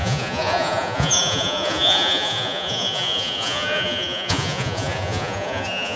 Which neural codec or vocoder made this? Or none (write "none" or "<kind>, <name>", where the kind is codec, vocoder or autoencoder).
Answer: vocoder, Vocos